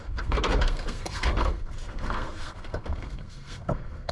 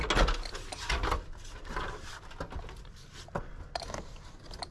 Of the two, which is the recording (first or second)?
second